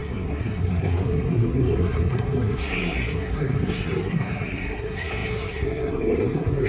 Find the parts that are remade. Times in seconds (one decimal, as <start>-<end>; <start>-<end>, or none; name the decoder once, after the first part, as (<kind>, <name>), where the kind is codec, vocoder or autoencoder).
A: 0.0-6.7 (codec, SNAC)